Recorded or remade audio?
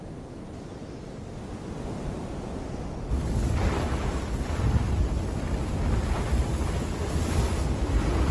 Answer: recorded